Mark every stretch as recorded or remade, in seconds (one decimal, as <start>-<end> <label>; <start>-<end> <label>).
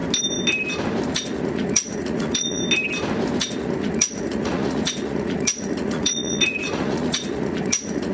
0.0-1.1 recorded; 1.1-2.6 remade; 2.6-3.4 recorded; 3.4-8.1 remade